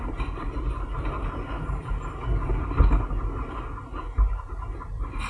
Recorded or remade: recorded